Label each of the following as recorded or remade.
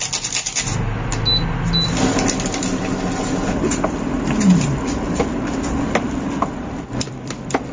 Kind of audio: recorded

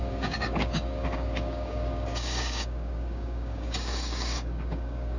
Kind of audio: remade